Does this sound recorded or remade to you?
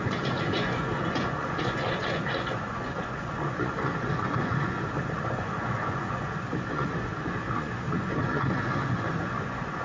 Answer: remade